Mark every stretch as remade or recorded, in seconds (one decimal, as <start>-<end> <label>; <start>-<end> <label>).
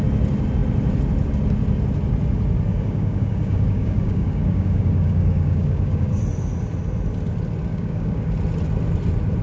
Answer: 0.0-2.7 recorded; 2.7-6.2 remade; 6.2-7.7 recorded; 7.7-8.3 remade; 8.3-9.4 recorded